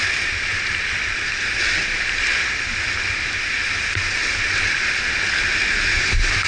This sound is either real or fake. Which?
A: real